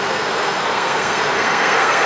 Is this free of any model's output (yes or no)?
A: no